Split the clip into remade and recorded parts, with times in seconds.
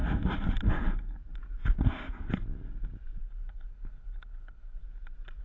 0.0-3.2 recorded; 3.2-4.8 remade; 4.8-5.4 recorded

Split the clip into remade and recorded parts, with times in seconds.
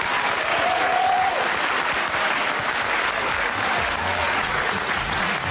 0.0-0.5 recorded; 0.5-1.3 remade; 1.3-4.2 recorded; 4.2-5.5 remade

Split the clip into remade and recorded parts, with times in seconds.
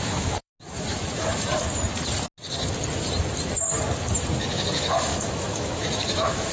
0.0-0.5 remade; 0.5-4.4 recorded; 4.4-6.5 remade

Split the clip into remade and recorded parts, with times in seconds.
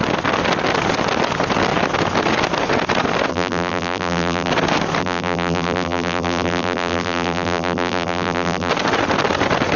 0.0-3.3 recorded; 3.3-4.5 remade; 4.5-5.0 recorded; 5.0-8.7 remade; 8.7-9.8 recorded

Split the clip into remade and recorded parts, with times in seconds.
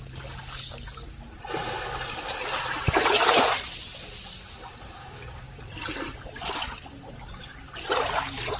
0.0-5.0 recorded; 5.0-5.6 remade; 5.6-8.6 recorded